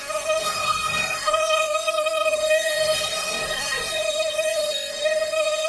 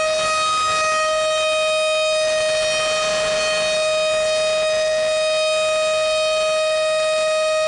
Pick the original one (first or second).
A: second